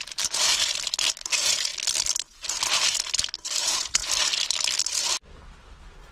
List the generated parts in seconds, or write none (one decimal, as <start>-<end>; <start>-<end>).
3.6-4.1